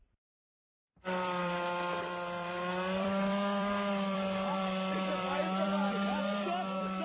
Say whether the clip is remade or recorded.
remade